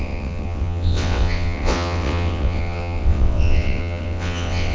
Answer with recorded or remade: remade